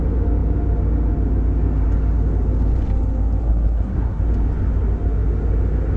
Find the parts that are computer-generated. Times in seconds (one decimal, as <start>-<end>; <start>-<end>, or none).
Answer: 3.4-4.2